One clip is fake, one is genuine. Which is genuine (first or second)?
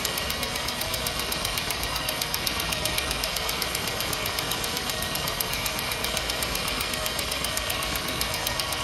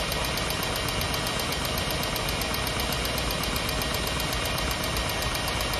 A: second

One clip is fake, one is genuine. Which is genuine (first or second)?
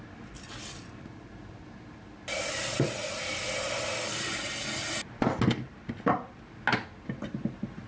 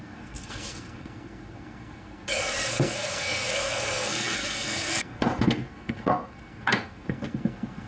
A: first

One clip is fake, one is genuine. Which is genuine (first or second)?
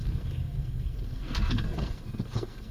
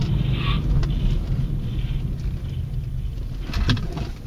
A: second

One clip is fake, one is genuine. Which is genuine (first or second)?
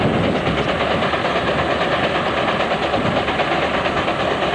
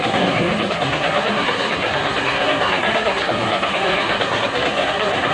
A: first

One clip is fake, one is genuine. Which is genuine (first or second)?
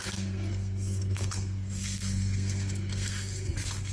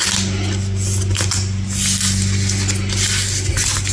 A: second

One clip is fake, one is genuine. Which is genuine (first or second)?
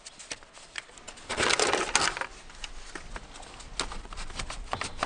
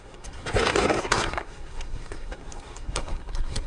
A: first